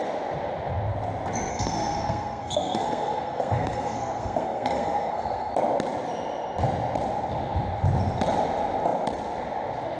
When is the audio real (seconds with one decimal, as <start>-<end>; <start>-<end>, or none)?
0.0-1.5; 5.5-10.0